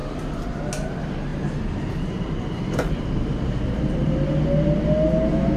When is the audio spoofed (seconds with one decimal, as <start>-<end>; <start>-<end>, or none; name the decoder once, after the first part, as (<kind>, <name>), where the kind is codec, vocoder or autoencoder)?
1.3-4.4 (vocoder, BigVGAN v2)